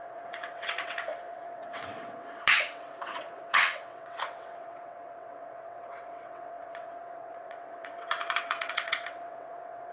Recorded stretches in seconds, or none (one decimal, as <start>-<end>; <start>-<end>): none